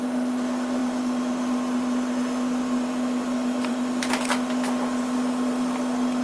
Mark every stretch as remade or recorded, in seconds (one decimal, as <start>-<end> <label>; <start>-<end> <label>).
0.0-6.2 recorded